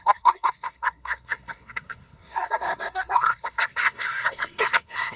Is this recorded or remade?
remade